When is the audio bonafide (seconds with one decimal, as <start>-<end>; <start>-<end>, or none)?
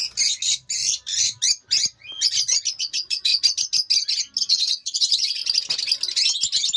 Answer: 0.0-2.7; 3.3-4.4; 5.4-6.8